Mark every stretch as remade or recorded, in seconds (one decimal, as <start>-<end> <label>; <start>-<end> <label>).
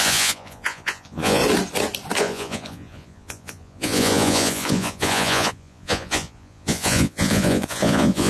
0.0-1.4 remade; 1.4-2.2 recorded; 2.2-8.3 remade